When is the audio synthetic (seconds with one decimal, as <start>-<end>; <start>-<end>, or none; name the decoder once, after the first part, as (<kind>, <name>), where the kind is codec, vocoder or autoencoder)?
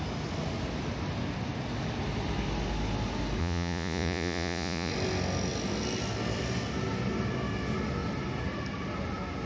3.4-4.9 (vocoder, Vocos)